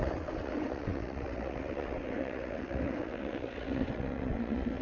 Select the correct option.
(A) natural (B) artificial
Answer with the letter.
B